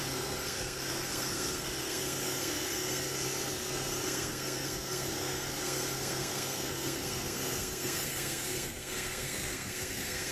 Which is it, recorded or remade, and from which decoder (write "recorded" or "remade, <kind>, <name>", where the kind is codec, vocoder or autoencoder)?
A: remade, codec, SNAC